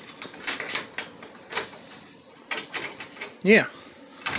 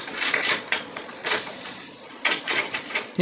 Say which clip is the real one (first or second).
first